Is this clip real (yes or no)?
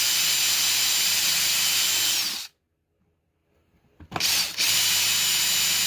yes